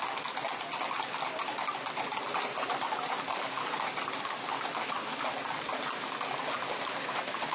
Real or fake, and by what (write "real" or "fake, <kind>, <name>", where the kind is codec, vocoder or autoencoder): real